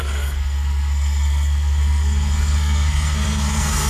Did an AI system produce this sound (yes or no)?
yes